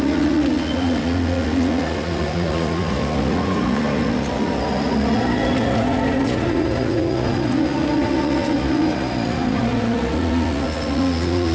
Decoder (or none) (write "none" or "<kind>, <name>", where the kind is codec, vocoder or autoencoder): vocoder, Vocos